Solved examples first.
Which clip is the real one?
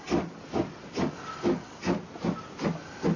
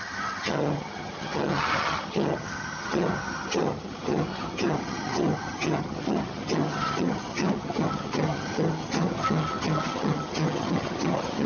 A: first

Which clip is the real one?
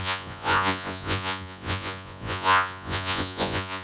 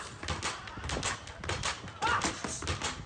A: second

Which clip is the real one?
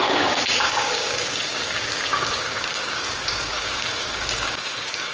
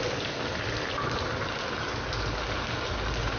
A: second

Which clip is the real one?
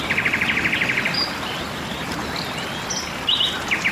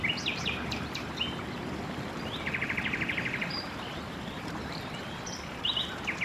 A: first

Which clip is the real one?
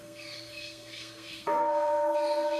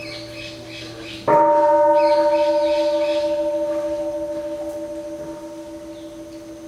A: second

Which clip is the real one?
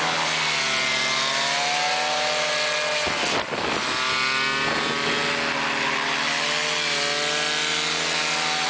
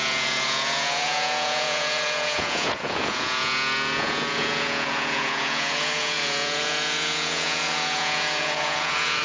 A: first